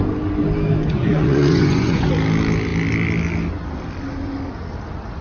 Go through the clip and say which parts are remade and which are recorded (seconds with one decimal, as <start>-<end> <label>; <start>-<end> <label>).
0.0-0.8 recorded; 0.8-2.1 remade; 2.1-5.2 recorded